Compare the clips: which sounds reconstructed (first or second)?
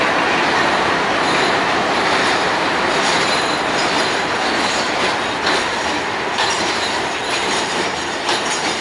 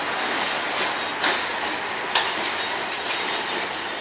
first